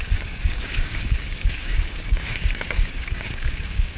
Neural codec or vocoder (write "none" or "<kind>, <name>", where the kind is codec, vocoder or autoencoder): codec, DAC